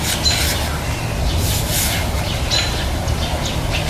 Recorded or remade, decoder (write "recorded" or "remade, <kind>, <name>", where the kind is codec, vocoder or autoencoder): recorded